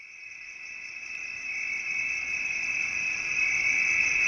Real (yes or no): yes